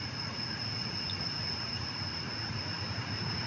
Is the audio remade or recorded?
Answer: remade